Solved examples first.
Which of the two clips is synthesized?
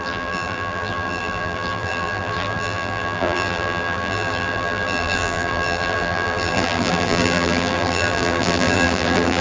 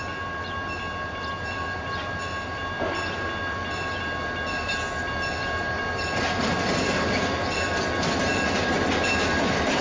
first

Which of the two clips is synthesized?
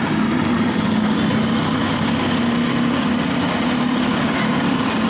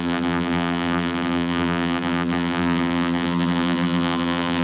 second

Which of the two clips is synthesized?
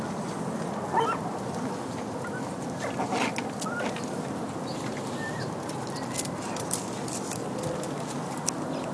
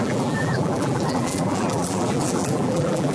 second